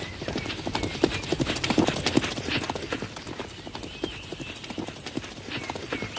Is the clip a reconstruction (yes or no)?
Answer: no